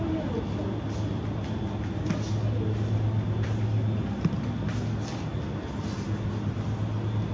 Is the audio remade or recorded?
recorded